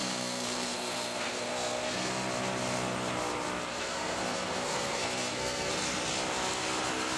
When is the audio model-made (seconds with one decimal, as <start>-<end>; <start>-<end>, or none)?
0.0-2.1; 3.7-5.7